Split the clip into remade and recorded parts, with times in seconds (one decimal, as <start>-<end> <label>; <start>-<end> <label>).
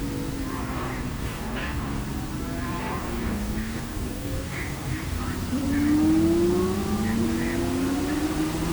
0.0-0.6 recorded; 0.6-2.0 remade; 2.0-2.8 recorded; 2.8-5.2 remade; 5.2-8.7 recorded